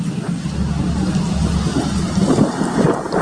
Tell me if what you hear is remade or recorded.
recorded